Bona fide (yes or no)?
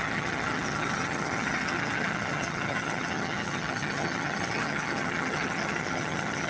no